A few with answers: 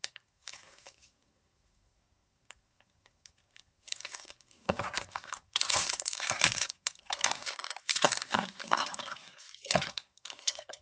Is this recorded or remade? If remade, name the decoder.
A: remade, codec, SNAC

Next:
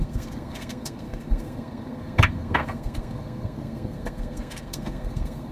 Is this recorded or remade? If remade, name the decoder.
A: remade, codec, SNAC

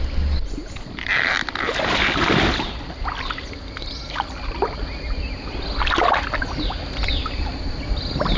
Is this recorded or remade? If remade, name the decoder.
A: recorded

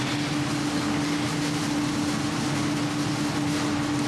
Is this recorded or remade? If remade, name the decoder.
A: recorded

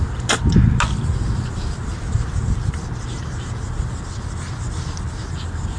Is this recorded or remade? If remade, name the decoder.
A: recorded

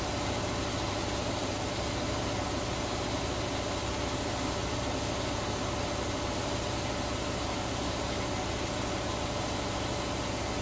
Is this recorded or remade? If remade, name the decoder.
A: recorded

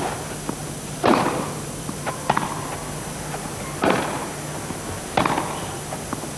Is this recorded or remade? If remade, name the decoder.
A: recorded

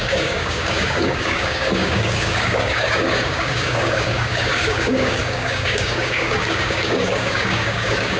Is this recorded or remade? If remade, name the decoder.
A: remade, codec, DAC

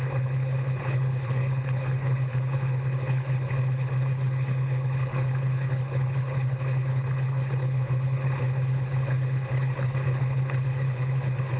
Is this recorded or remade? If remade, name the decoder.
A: remade, codec, HILCodec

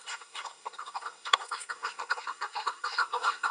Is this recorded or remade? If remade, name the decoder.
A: remade, codec, SNAC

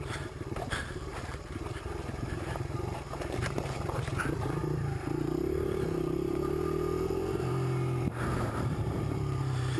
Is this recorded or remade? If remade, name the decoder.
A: remade, vocoder, BigVGAN v2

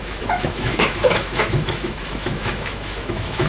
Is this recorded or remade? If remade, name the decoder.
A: remade, autoencoder, DAC-VAE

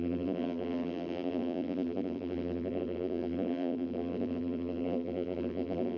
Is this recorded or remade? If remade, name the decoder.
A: remade, vocoder, BigVGAN v2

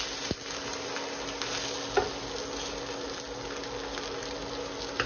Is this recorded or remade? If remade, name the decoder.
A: recorded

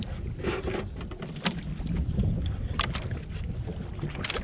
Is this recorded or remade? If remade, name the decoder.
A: recorded